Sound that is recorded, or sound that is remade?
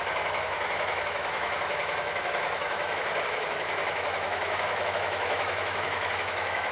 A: remade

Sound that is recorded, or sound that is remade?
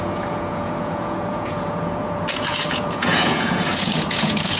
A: remade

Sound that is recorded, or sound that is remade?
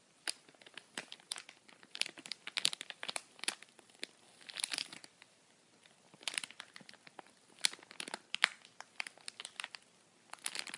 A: recorded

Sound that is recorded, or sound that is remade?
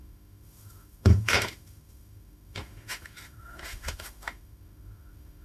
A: remade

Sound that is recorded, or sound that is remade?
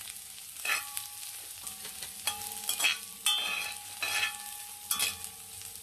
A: recorded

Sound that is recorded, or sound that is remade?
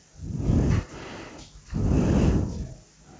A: recorded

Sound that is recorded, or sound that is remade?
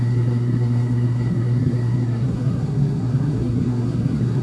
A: remade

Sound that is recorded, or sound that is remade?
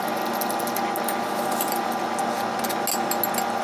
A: recorded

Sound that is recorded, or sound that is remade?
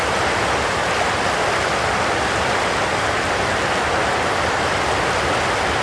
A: recorded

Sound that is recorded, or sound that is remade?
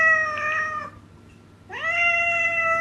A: recorded